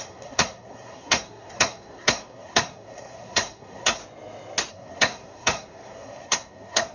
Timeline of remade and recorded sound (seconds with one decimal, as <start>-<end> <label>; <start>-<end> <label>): 0.0-4.0 remade; 4.0-4.7 recorded; 4.7-6.9 remade